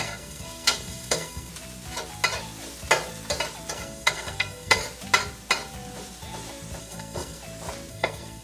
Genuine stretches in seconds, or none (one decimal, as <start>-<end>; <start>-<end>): 1.5-3.7; 4.8-6.8; 7.4-7.9